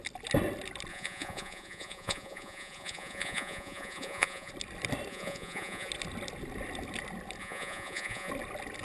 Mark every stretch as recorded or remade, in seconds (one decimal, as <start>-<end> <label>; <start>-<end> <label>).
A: 0.0-0.9 recorded; 0.9-4.5 remade; 4.5-5.1 recorded; 5.1-5.9 remade; 5.9-7.4 recorded; 7.4-8.3 remade; 8.3-8.8 recorded